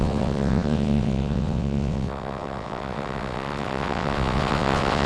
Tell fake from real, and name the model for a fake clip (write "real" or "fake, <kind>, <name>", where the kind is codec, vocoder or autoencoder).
fake, vocoder, WaveNeXt